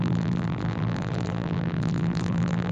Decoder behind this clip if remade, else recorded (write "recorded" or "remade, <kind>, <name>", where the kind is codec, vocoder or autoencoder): remade, vocoder, BigVGAN v2